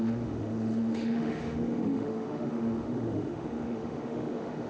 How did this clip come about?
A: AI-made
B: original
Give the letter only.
A